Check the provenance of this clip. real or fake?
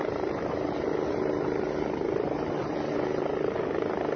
real